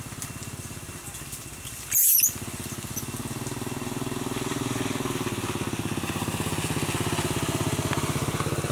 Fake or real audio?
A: real